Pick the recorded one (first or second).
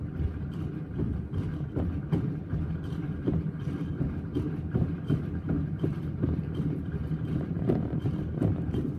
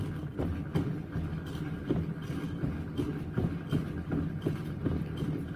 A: second